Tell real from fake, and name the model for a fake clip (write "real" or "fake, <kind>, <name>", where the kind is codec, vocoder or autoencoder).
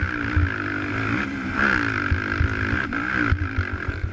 real